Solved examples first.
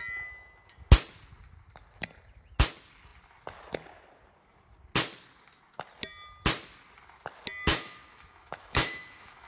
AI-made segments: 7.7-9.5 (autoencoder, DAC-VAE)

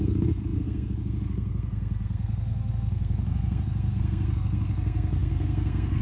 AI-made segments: 0.0-6.0 (codec, SNAC)

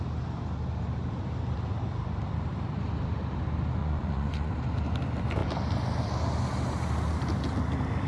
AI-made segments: 3.8-4.5 (vocoder, Vocos)

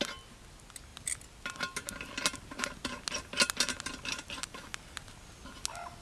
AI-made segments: none

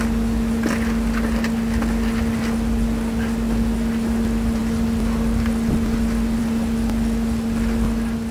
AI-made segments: none

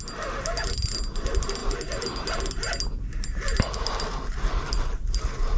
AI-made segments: none

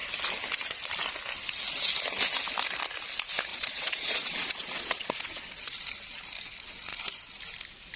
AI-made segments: 3.5-5.8 (vocoder, Vocos)